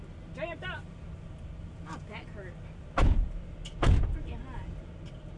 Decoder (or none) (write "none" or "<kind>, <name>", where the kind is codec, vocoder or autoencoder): none